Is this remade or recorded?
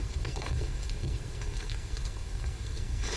remade